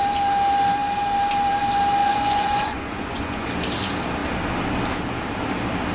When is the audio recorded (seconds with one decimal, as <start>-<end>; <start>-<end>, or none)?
0.0-2.0; 3.5-5.9